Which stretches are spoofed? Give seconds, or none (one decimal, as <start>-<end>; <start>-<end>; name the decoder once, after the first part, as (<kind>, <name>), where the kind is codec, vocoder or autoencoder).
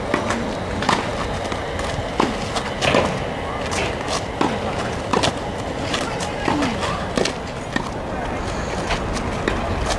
none